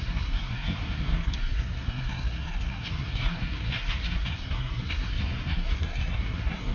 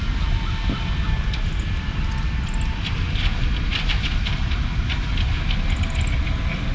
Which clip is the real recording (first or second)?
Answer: second